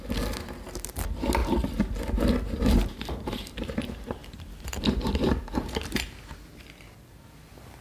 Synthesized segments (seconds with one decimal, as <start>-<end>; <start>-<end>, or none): none